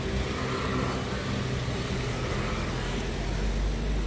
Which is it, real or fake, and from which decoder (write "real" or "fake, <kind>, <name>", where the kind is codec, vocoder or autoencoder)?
real